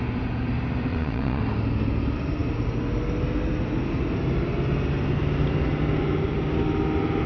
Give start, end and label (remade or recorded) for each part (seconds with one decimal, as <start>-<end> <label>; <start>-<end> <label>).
0.0-0.9 recorded; 0.9-1.4 remade; 1.4-7.3 recorded